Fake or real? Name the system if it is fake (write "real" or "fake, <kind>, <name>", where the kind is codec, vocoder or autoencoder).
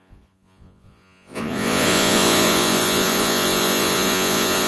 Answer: fake, vocoder, Vocos